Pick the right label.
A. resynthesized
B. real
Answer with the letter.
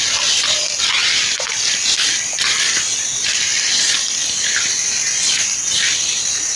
B